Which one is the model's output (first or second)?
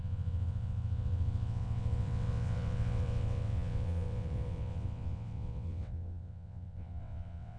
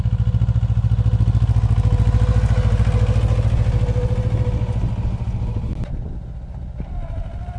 first